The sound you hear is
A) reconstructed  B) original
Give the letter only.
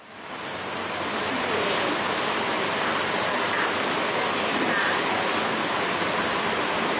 B